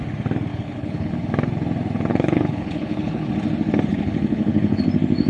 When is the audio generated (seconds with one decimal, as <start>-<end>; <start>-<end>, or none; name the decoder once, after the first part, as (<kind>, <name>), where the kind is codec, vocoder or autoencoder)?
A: 0.5-1.1 (codec, HILCodec); 2.1-3.3; 3.9-4.8

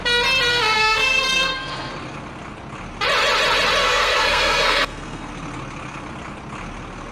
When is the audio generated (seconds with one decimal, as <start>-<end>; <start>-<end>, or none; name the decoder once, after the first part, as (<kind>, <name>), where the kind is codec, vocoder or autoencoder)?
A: 0.5-1.9 (codec, SNAC); 3.8-5.3